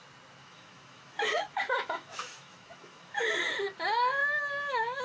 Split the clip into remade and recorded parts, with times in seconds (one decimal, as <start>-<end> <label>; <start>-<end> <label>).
0.0-0.4 recorded; 0.4-3.4 remade; 3.4-4.2 recorded; 4.2-5.0 remade